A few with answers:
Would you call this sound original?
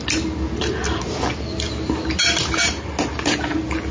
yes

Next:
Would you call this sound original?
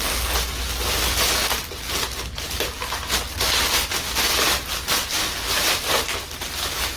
yes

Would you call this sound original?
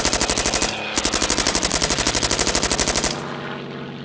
yes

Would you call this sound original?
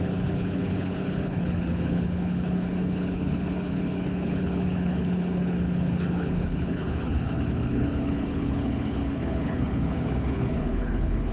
no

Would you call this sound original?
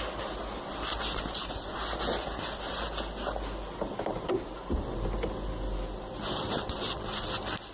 yes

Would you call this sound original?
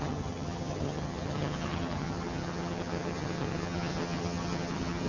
no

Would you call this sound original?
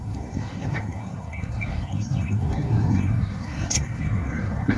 no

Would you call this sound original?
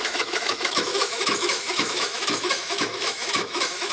no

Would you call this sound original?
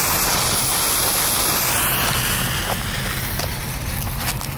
yes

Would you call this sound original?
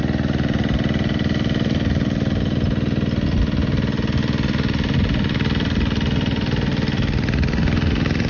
yes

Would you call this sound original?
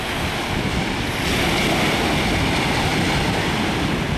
yes